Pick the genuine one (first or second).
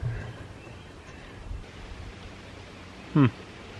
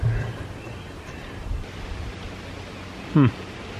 second